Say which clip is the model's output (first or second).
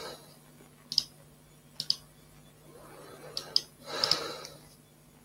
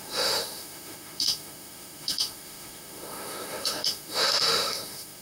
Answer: second